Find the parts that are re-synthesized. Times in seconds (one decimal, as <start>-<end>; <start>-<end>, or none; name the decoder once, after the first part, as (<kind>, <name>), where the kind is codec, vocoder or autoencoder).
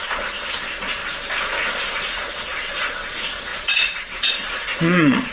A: 0.0-1.0 (vocoder, Vocos); 1.8-5.3